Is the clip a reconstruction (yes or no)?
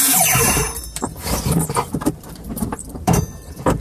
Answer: yes